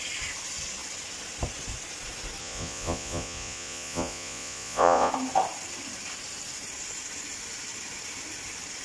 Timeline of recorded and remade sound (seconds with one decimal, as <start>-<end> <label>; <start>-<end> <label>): 0.0-2.4 recorded; 2.4-5.1 remade; 5.1-8.8 recorded